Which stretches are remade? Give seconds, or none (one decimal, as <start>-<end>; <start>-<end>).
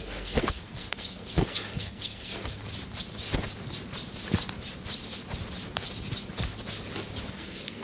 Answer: 0.0-2.6; 7.3-7.8